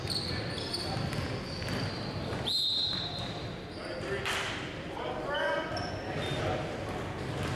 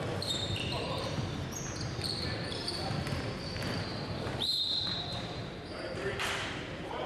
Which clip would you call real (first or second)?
first